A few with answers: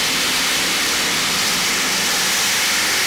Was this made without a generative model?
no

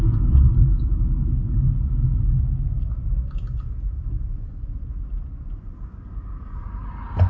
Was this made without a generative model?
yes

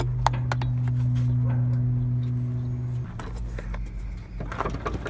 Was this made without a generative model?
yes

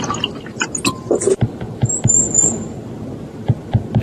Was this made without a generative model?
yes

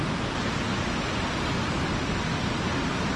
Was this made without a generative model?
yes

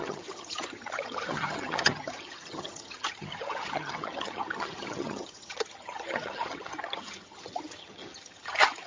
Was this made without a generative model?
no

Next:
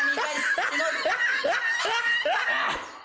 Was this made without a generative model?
yes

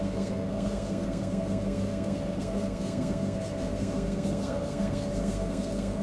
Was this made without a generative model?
no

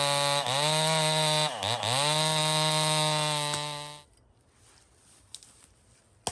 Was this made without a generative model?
yes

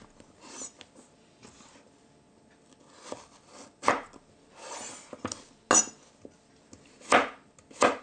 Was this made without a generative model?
yes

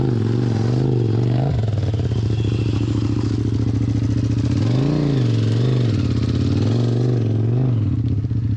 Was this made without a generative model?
yes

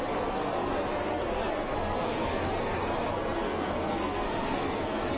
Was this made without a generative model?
no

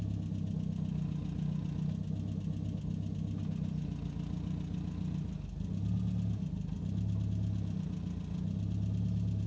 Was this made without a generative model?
yes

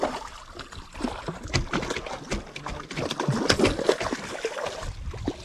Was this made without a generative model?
yes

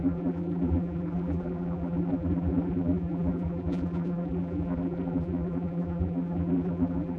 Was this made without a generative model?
no